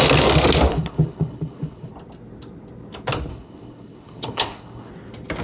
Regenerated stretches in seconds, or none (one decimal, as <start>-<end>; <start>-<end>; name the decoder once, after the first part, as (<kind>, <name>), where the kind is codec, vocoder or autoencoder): 0.7-1.9 (codec, HILCodec); 3.3-4.9